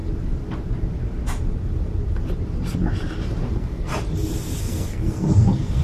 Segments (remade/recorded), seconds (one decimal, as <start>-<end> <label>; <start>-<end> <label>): 0.0-3.5 recorded; 3.5-3.9 remade; 3.9-4.6 recorded; 4.6-5.8 remade

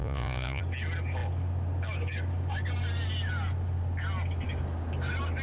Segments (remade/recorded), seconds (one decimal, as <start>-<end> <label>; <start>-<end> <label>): 0.0-0.6 remade; 0.6-5.4 recorded

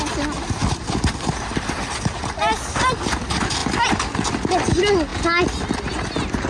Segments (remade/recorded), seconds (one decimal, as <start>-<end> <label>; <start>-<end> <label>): 0.0-6.5 recorded

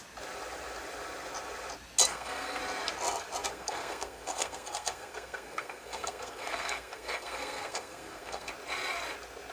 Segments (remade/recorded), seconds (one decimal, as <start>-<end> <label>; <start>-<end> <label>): 0.0-2.1 recorded; 2.1-2.6 remade; 2.6-3.5 recorded; 3.5-8.5 remade; 8.5-9.5 recorded

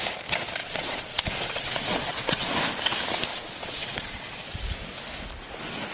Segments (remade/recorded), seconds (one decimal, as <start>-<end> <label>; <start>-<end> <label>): 0.0-0.6 recorded; 0.6-2.5 remade; 2.5-3.3 recorded; 3.3-4.2 remade; 4.2-5.9 recorded

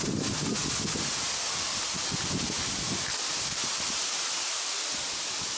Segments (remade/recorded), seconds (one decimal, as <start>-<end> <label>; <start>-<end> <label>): 0.0-5.6 recorded

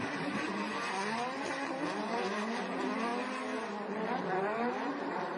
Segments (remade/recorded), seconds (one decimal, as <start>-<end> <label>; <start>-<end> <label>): 0.0-5.4 recorded

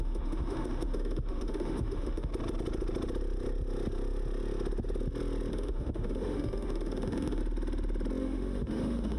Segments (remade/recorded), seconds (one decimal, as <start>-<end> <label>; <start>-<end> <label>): 0.0-2.3 remade; 2.3-5.5 recorded; 5.5-7.4 remade; 7.4-8.2 recorded; 8.2-9.2 remade